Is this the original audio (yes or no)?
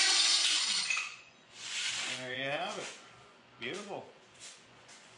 no